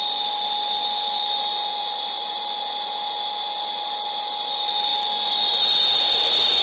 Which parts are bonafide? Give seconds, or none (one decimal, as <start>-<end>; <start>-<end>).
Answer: 0.0-6.6